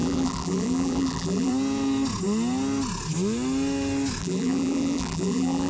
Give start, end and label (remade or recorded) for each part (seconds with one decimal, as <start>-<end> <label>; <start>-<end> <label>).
0.0-1.5 remade; 1.5-4.2 recorded; 4.2-5.7 remade